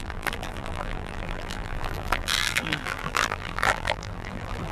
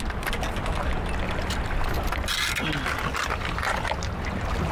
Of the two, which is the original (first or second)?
second